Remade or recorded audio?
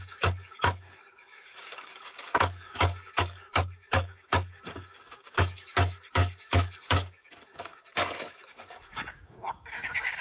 remade